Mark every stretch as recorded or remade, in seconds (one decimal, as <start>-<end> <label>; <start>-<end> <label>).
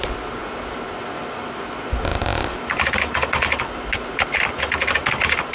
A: 0.0-5.5 recorded